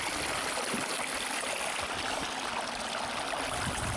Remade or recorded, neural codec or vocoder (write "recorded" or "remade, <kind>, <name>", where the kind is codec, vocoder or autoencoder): recorded